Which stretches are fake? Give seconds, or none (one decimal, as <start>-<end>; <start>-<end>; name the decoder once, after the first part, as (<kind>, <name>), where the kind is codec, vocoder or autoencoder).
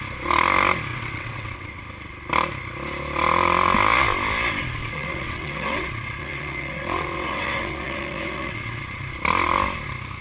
0.9-1.8 (vocoder, WaveNeXt); 4.8-8.8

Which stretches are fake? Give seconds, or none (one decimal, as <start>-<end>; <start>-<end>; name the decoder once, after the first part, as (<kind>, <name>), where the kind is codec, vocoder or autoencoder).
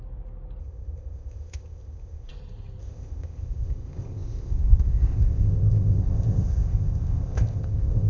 0.6-2.3 (codec, ZipCodec); 2.8-8.1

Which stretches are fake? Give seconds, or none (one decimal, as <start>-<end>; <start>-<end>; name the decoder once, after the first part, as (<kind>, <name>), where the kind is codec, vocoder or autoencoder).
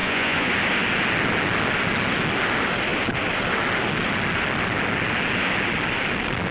0.0-0.5 (vocoder, Vocos)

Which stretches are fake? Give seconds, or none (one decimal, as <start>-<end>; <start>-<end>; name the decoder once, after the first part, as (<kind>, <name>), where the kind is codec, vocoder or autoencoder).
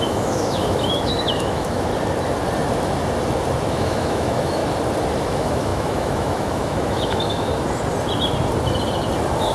0.0-1.9 (autoencoder, DAC-VAE); 3.7-4.6; 5.2-7.5